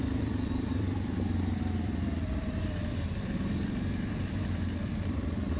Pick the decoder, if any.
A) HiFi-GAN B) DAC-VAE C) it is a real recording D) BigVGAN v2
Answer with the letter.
D